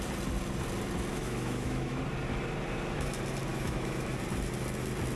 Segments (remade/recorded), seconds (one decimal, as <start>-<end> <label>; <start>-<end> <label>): 0.0-1.1 recorded; 1.1-2.0 remade; 2.0-3.5 recorded; 3.5-4.2 remade; 4.2-5.2 recorded